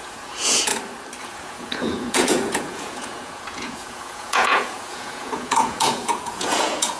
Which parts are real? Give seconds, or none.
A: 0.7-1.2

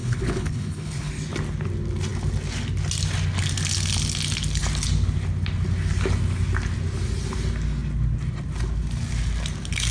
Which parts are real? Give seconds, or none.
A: 1.1-9.9